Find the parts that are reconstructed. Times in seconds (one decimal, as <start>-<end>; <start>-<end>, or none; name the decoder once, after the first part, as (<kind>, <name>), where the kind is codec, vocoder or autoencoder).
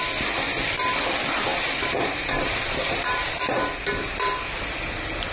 1.5-3.3 (vocoder, BigVGAN v2)